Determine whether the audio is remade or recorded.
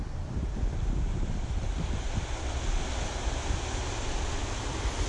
recorded